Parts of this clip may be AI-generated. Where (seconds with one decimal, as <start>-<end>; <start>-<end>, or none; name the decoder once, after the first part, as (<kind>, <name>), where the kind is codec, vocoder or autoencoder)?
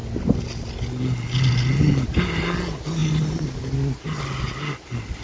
none